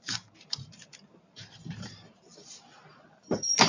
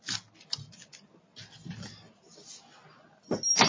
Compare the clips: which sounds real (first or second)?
second